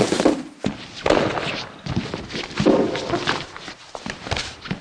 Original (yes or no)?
yes